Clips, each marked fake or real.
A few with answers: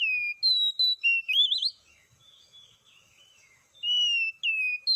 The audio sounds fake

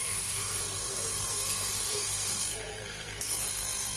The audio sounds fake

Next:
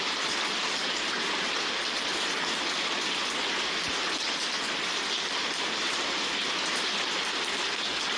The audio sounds real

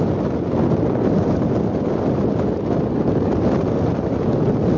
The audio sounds real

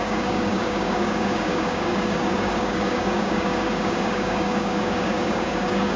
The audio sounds fake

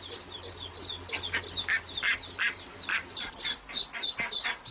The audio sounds real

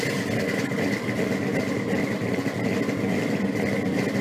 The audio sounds real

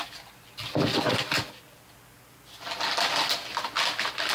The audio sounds real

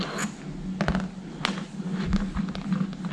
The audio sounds real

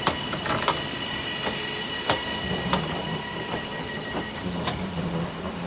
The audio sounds real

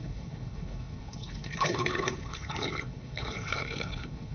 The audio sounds fake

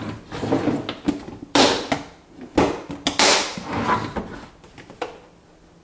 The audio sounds real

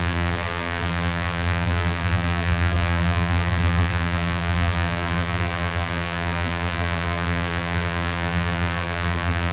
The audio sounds fake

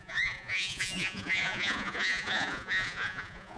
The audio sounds fake